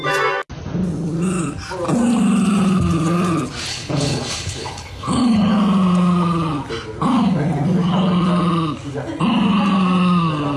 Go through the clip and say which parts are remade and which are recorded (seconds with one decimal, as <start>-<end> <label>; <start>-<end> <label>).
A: 0.0-3.7 recorded; 3.7-5.5 remade; 5.5-10.6 recorded